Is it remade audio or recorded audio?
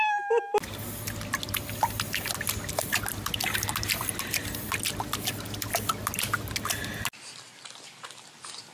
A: recorded